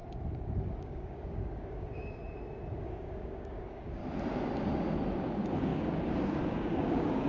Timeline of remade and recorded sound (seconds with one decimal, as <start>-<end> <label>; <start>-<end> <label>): 0.0-0.8 recorded; 0.8-2.2 remade; 2.2-2.8 recorded; 2.8-4.0 remade; 4.0-5.1 recorded; 5.1-7.3 remade